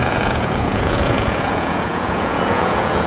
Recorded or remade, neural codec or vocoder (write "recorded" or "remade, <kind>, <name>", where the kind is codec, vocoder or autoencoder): remade, vocoder, Vocos